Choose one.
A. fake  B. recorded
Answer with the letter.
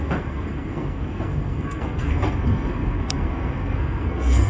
A